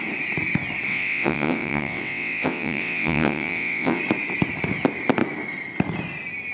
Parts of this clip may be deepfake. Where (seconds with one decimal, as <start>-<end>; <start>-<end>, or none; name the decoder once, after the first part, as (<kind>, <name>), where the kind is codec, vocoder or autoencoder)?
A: 0.9-4.0 (vocoder, WaveNeXt)